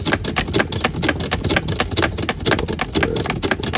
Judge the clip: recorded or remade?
recorded